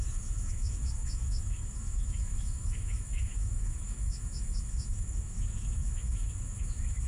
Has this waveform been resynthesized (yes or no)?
yes